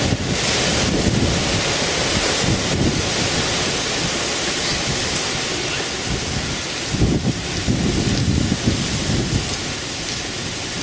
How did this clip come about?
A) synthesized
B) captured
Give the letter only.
B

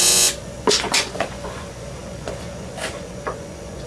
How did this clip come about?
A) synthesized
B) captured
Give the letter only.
A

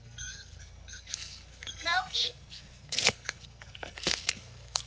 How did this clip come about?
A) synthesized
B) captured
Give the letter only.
A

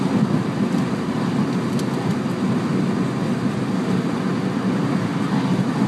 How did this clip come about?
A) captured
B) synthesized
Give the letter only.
A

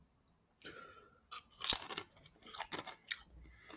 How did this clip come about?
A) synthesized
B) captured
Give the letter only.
B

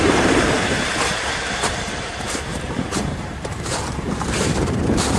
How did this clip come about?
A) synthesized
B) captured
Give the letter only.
A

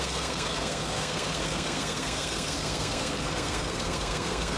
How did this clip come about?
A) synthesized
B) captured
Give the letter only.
A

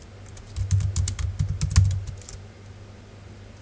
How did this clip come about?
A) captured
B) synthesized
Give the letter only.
A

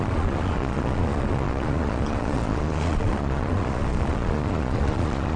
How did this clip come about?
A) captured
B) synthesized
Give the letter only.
B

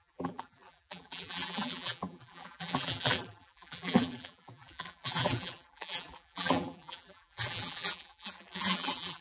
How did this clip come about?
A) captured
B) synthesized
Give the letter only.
B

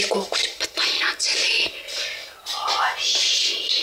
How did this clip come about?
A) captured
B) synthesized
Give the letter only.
A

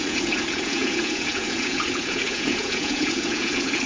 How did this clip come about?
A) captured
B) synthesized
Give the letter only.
B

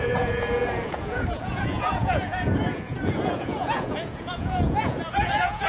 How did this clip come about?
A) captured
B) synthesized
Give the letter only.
B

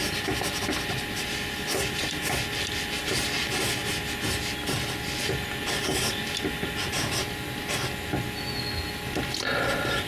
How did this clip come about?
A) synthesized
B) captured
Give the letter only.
B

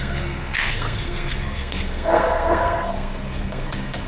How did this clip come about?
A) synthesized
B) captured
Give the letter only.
A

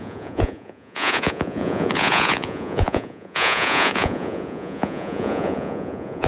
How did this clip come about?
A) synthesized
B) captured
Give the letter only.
A